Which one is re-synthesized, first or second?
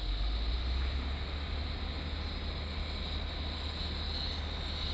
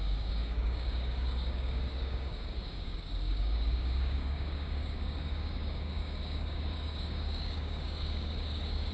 second